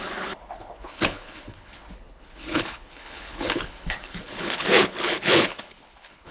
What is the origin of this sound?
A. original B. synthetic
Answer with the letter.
B